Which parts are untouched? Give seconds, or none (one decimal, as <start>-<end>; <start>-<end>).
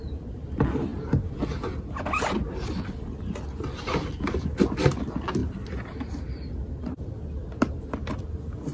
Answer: 0.0-8.7